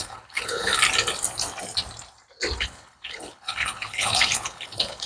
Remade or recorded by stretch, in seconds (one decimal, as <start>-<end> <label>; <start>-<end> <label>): 0.0-0.7 remade; 0.7-2.6 recorded; 2.6-5.1 remade